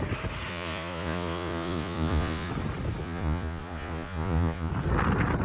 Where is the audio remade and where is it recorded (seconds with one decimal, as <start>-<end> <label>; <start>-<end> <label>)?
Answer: 0.0-0.5 recorded; 0.5-2.5 remade; 2.5-3.0 recorded; 3.0-4.7 remade; 4.7-5.4 recorded